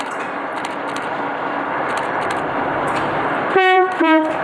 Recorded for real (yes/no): no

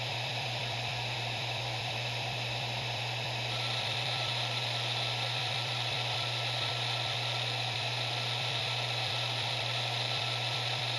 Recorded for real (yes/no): no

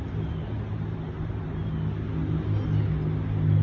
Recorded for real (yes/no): yes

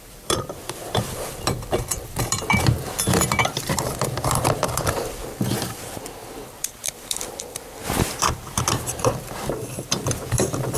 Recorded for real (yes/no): no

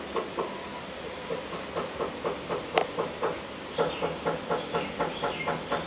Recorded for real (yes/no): yes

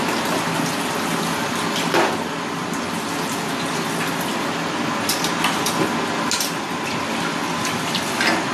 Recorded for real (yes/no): yes